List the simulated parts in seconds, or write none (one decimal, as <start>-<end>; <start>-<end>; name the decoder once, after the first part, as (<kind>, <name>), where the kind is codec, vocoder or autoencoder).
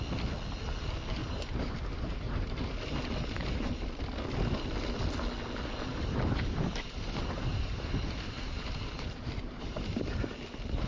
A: 1.2-3.9 (vocoder, BigVGAN v2); 5.9-10.3